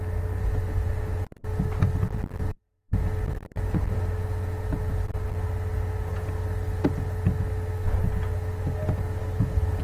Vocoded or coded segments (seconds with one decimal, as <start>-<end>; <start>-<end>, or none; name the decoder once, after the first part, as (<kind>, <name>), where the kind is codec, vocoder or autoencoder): none